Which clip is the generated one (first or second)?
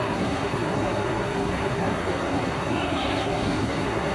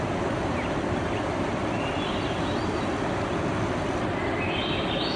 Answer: first